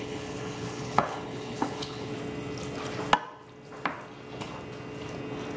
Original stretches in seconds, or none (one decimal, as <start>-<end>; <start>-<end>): 2.1-5.6